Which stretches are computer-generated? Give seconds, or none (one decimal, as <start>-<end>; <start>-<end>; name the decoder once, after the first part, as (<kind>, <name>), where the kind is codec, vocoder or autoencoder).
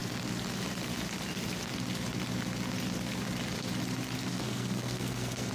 4.3-5.5 (codec, SNAC)